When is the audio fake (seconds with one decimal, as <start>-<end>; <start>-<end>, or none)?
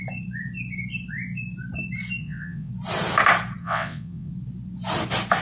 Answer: 2.2-2.7; 3.6-4.3